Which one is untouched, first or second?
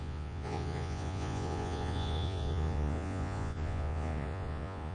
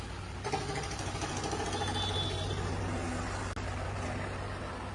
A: second